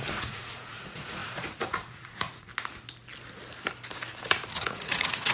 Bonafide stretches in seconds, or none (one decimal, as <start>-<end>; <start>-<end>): 2.5-4.5